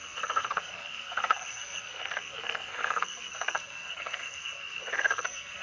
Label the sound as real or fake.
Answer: fake